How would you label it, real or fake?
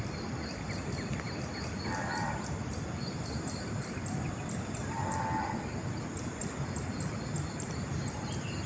real